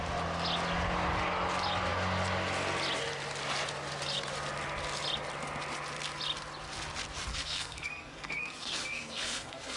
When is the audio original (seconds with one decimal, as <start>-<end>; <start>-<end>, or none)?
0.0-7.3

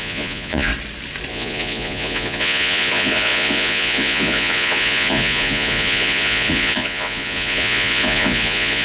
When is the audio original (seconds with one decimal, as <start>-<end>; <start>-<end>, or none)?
0.7-1.3

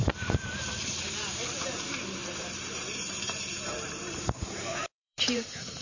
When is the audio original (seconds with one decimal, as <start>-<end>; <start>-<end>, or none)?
none

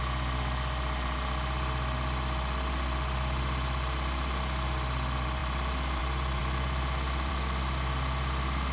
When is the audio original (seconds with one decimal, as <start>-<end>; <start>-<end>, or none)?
0.0-8.7

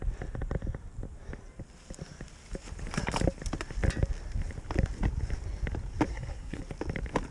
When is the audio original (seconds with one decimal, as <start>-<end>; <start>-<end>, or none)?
0.0-6.1; 6.6-7.3

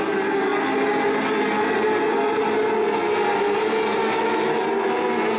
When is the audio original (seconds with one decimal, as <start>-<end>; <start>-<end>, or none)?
0.0-4.0; 4.6-5.4